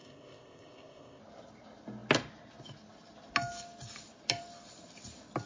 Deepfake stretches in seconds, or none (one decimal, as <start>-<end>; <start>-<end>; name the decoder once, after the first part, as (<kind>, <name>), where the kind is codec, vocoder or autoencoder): 0.0-1.2 (codec, ZipCodec)